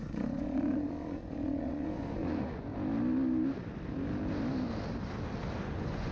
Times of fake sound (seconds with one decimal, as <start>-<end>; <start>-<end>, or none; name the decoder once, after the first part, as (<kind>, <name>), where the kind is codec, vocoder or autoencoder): 0.0-2.7 (vocoder, Vocos); 5.6-6.1